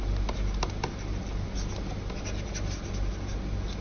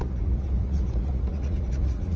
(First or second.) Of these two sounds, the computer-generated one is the second